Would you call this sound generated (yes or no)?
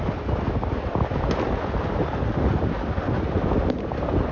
no